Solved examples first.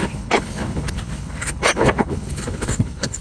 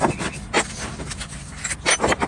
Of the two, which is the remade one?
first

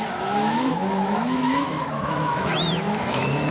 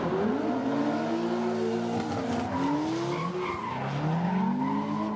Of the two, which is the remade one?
first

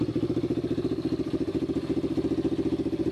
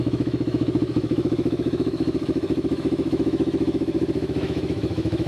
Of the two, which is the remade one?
second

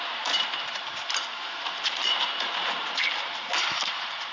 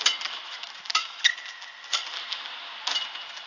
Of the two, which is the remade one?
first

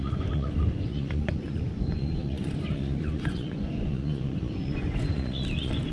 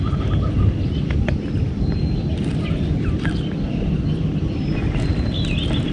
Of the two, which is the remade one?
first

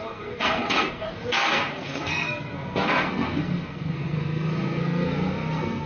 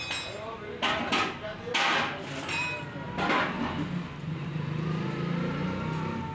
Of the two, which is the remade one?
first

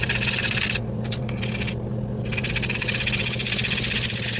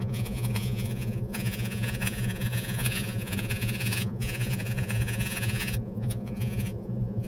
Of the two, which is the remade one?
second